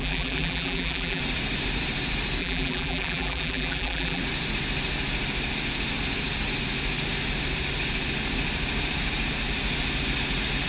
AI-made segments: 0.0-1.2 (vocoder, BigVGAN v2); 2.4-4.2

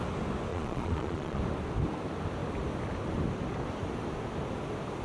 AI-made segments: 0.5-1.4 (vocoder, Vocos)

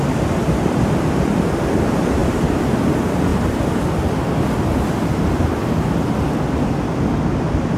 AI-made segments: 2.2-2.7 (vocoder, BigVGAN v2)

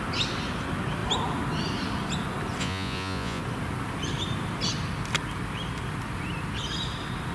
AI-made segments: 2.6-3.4 (vocoder, Vocos)